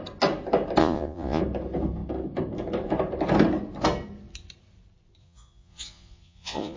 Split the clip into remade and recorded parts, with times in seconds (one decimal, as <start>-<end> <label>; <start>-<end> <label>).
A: 0.0-0.8 recorded; 0.8-1.4 remade; 1.4-5.2 recorded; 5.2-6.8 remade